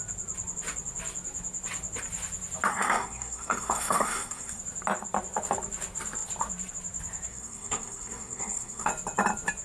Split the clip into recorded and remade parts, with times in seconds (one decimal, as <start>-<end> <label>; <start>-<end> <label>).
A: 0.0-2.7 recorded; 2.7-4.6 remade; 4.6-7.3 recorded; 7.3-8.9 remade; 8.9-9.6 recorded